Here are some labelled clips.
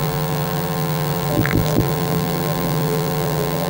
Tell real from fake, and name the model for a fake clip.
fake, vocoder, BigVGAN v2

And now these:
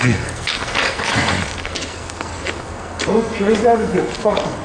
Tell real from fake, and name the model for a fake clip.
fake, codec, SNAC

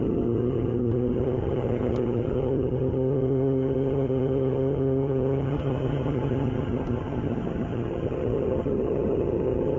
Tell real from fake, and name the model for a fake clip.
fake, vocoder, HiFi-GAN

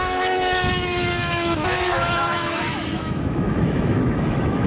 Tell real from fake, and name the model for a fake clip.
fake, autoencoder, DAC-VAE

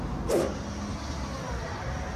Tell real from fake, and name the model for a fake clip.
real